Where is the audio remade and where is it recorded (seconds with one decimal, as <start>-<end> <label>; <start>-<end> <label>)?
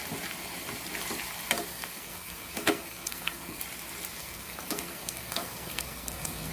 0.0-1.7 recorded; 1.7-3.6 remade; 3.6-4.2 recorded; 4.2-6.5 remade